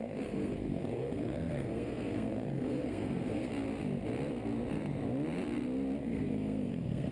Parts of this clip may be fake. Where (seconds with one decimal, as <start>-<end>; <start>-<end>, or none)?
0.0-3.5; 6.0-7.1